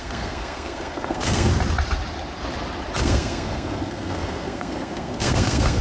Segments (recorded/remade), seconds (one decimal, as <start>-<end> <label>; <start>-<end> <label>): 0.0-1.5 remade; 1.5-3.0 recorded; 3.0-5.8 remade